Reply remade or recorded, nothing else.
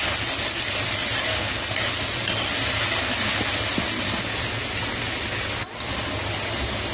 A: recorded